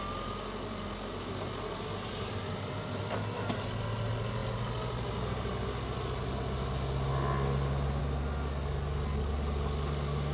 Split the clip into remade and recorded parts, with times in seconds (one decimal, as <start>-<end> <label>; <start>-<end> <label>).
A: 0.0-10.3 recorded